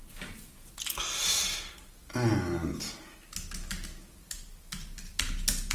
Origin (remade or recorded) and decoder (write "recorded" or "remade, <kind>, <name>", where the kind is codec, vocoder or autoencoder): recorded